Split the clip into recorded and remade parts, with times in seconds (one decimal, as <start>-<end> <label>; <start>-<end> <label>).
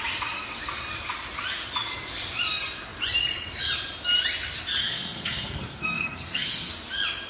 0.0-4.8 recorded; 4.8-6.7 remade; 6.7-7.3 recorded